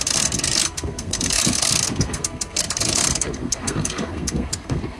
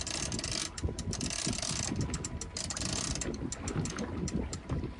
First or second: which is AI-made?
first